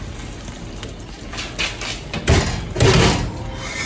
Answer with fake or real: real